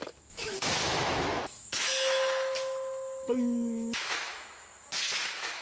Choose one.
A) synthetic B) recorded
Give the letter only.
A